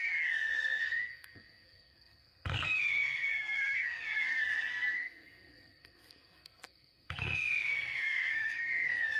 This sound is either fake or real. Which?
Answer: fake